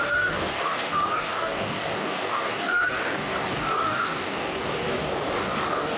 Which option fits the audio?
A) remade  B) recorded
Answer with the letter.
A